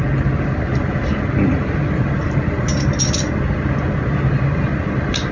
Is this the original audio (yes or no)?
yes